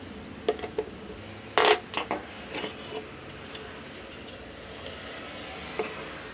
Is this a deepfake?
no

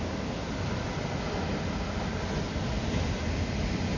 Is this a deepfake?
no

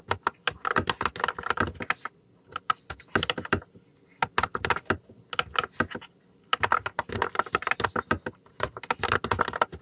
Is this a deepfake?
no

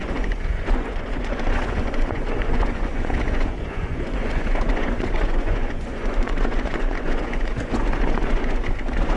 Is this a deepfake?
yes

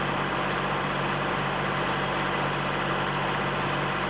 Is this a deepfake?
no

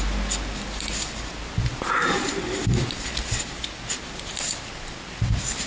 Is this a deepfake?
no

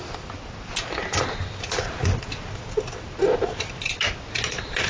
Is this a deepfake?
no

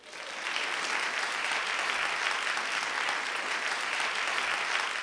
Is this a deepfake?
no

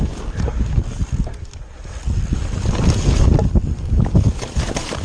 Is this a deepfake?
no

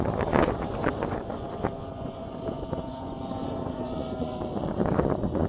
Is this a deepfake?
yes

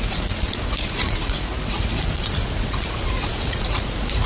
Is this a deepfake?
yes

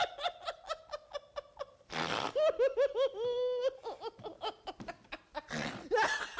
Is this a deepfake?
no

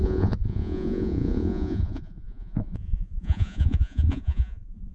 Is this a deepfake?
yes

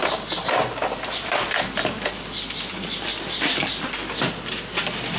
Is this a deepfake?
no